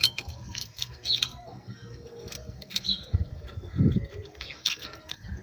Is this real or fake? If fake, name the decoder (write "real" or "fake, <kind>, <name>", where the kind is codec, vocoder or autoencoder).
fake, codec, SNAC